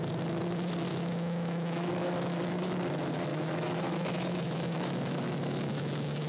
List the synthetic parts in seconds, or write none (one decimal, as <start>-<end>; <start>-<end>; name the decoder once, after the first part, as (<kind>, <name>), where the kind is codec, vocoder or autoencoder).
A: 0.9-2.8 (autoencoder, DAC-VAE); 3.3-6.3